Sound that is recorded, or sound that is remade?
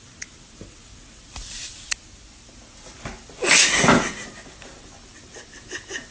recorded